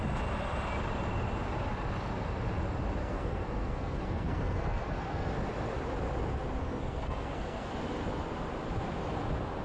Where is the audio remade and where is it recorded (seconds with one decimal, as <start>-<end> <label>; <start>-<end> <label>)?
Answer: 0.0-3.0 recorded; 3.0-5.3 remade; 5.3-6.6 recorded; 6.6-7.7 remade; 7.7-9.6 recorded